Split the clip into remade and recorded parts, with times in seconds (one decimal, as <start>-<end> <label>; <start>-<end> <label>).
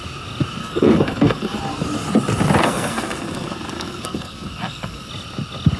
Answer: 0.0-0.6 recorded; 0.6-1.6 remade; 1.6-2.6 recorded; 2.6-5.1 remade; 5.1-5.8 recorded